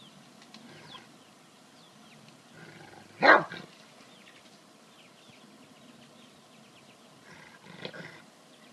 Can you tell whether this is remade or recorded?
recorded